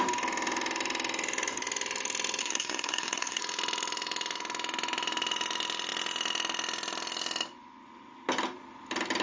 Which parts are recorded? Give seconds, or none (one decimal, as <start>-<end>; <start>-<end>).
0.0-2.4; 3.4-9.2